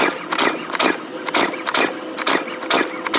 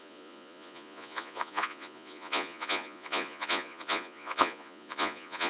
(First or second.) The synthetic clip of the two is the second